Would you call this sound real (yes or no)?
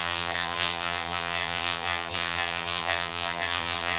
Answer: no